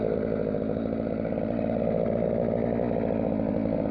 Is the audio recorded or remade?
recorded